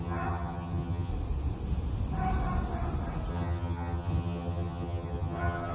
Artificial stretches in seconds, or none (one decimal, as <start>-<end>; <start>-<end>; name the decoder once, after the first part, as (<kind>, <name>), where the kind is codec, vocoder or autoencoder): 0.0-1.1 (vocoder, HiFi-GAN); 3.3-5.7